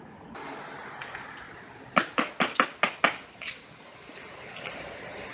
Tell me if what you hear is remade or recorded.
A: recorded